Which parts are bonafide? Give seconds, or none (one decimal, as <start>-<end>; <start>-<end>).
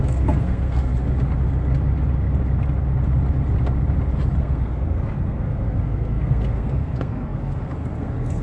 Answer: 0.9-4.4